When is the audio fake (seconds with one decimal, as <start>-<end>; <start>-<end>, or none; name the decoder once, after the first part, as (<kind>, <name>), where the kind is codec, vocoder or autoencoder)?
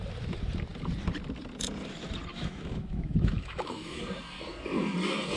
2.3-4.0 (autoencoder, DAC-VAE)